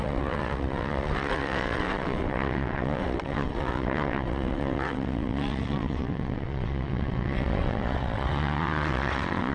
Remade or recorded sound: remade